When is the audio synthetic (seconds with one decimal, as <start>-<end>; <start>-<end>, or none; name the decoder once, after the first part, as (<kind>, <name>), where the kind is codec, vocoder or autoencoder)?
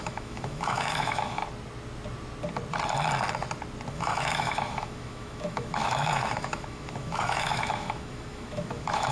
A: 0.0-1.4 (autoencoder, DAC-VAE); 3.9-9.1